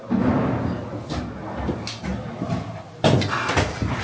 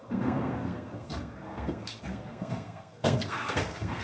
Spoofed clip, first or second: second